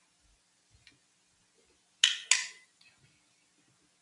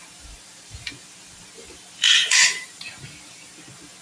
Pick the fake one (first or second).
second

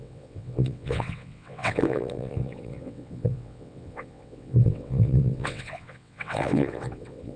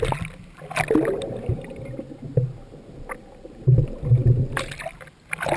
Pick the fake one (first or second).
first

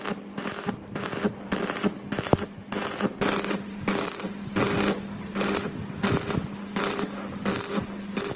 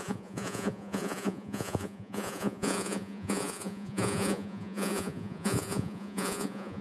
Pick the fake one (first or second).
second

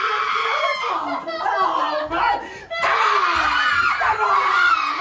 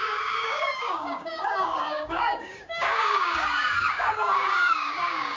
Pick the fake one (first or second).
second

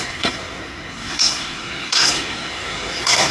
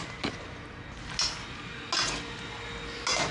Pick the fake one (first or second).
first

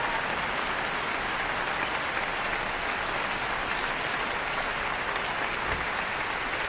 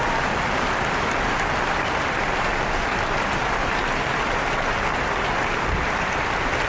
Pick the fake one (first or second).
second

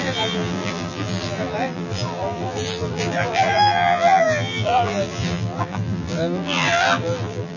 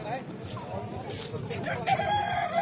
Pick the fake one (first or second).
first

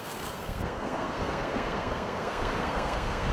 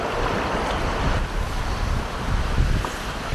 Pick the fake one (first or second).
first